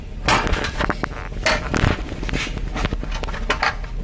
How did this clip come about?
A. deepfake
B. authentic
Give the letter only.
B